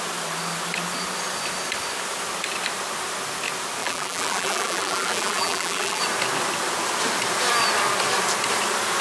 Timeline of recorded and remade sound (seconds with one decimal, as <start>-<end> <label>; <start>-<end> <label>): 0.0-3.8 recorded; 3.8-6.0 remade; 6.0-9.0 recorded

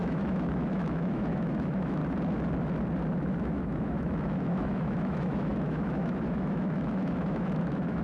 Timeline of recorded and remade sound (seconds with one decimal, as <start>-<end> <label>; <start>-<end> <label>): 0.0-2.0 remade; 2.0-3.4 recorded; 3.4-8.0 remade